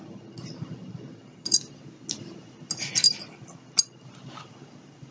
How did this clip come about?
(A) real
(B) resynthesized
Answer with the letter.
A